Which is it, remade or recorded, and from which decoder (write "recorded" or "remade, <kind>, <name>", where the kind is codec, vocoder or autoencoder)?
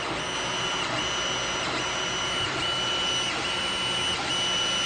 recorded